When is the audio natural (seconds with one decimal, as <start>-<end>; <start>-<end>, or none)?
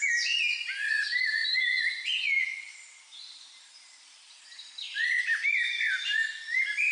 0.0-6.9